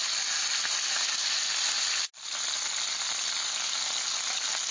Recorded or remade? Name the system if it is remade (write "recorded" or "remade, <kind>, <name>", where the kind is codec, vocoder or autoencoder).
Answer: recorded